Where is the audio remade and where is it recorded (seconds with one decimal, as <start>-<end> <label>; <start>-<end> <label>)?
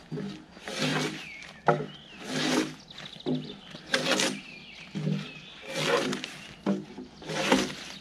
0.0-0.9 recorded; 0.9-1.5 remade; 1.5-8.0 recorded